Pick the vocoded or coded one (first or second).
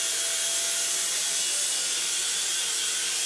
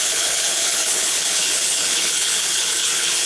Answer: second